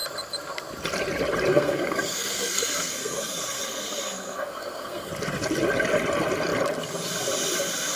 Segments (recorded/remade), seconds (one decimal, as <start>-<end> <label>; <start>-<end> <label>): 0.0-1.5 recorded; 1.5-5.1 remade; 5.1-8.0 recorded